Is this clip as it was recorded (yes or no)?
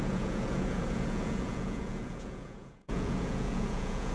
no